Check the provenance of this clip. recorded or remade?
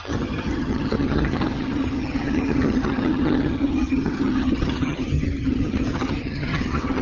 remade